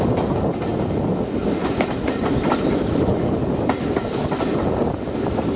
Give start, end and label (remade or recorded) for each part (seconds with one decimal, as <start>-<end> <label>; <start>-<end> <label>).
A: 0.0-5.6 recorded